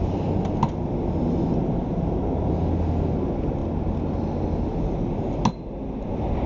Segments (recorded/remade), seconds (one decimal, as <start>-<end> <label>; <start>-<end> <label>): 0.0-6.5 recorded